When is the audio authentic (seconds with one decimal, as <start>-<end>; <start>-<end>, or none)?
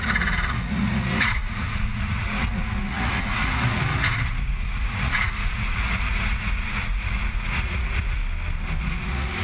8.2-8.8